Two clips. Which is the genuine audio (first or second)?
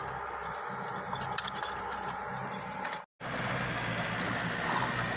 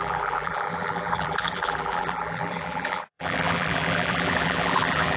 first